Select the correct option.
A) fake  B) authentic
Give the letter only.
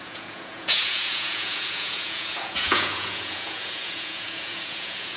A